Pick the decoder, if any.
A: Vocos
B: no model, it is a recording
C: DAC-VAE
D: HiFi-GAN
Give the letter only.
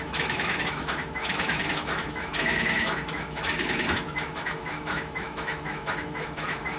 C